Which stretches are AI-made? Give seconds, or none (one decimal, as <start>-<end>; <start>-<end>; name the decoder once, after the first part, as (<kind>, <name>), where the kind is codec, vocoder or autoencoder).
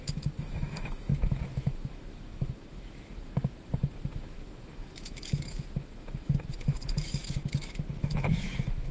0.0-8.9 (autoencoder, DAC-VAE)